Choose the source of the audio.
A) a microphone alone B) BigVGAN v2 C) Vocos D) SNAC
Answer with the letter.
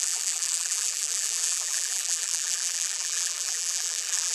B